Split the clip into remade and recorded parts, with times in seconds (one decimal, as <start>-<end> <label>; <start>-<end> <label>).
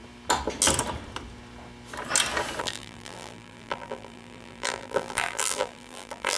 0.0-2.6 recorded; 2.6-6.4 remade